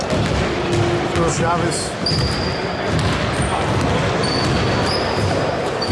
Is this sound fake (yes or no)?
no